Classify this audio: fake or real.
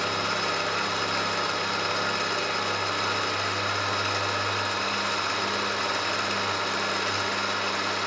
real